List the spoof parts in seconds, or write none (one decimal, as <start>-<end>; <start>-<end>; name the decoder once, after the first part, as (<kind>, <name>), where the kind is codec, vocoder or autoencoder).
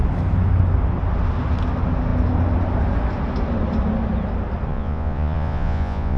4.7-6.2 (vocoder, Vocos)